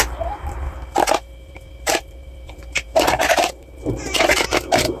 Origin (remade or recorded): remade